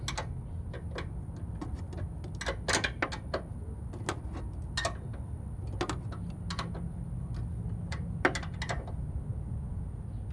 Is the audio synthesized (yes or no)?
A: no